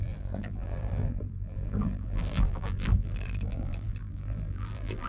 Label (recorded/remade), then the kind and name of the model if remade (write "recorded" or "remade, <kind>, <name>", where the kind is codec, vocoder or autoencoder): remade, vocoder, BigVGAN v2